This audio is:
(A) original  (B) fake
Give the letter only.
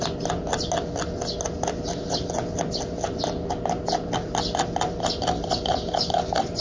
A